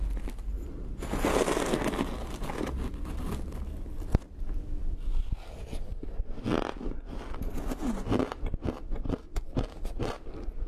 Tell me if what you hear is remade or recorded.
recorded